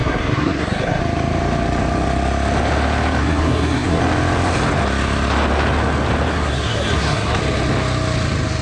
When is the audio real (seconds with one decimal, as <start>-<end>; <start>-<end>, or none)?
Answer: 1.0-3.2; 4.0-6.3; 7.4-8.6